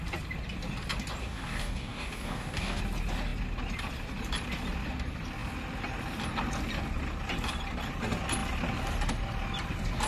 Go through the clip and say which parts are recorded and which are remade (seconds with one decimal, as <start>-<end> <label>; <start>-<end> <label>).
0.0-1.2 recorded; 1.2-2.8 remade; 2.8-10.1 recorded